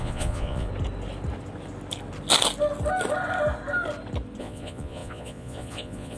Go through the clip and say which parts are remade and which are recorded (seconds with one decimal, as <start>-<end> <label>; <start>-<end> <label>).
0.0-0.7 remade; 0.7-4.4 recorded; 4.4-6.2 remade